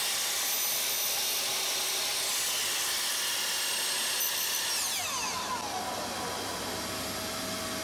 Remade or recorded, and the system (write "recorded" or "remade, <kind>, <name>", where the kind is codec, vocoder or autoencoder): recorded